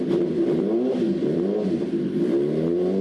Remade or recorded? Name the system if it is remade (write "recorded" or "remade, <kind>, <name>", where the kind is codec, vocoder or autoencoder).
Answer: remade, vocoder, BigVGAN v2